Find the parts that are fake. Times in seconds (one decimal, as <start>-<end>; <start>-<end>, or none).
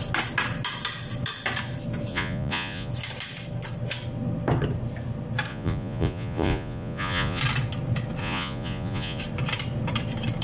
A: 2.1-2.9; 5.5-7.4; 8.2-9.2